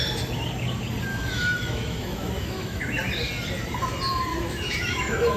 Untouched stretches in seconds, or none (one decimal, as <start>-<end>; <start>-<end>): 0.0-1.1; 2.8-4.3